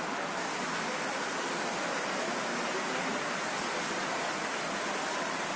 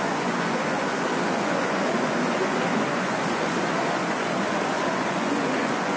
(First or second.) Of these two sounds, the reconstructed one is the second